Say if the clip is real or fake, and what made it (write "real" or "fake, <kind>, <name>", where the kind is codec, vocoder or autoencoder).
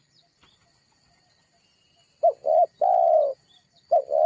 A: real